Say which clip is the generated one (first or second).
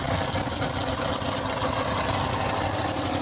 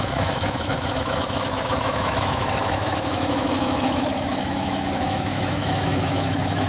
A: second